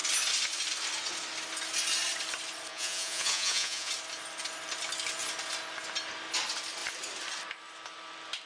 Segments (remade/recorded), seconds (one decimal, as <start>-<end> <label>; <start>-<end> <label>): 0.0-2.7 recorded; 2.7-3.9 remade; 3.9-8.5 recorded